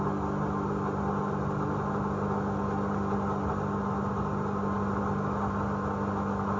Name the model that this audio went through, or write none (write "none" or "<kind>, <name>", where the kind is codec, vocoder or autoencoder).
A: none